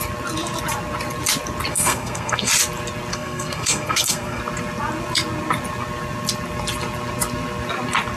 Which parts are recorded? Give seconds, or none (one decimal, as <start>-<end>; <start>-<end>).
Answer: 0.0-1.7; 2.5-3.1; 4.4-8.2